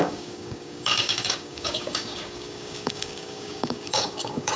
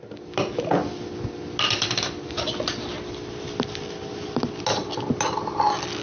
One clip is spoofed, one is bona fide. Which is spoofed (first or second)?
first